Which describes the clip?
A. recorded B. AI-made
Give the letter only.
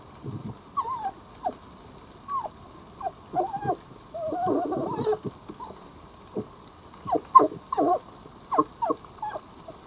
A